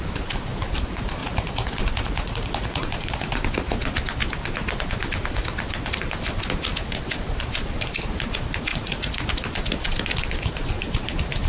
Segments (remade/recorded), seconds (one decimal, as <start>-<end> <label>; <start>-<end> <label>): 0.0-1.2 recorded; 1.2-3.4 remade; 3.4-8.7 recorded; 8.7-9.3 remade; 9.3-11.5 recorded